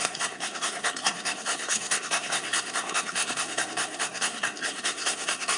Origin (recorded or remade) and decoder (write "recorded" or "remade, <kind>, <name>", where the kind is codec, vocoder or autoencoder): remade, codec, SNAC